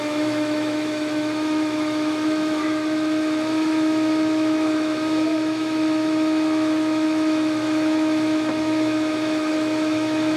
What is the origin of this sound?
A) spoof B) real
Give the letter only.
A